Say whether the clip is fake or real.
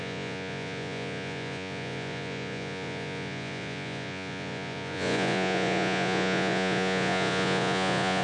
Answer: fake